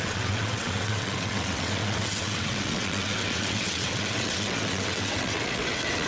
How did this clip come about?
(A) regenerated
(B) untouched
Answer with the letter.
A